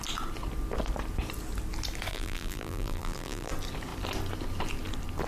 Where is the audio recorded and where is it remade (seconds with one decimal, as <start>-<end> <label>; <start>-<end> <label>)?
0.0-2.1 recorded; 2.1-3.5 remade; 3.5-5.3 recorded